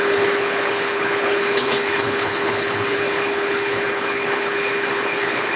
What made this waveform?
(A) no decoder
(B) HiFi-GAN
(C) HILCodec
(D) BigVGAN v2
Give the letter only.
C